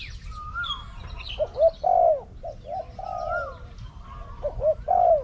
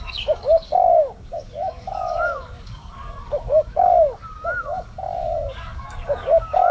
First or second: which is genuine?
first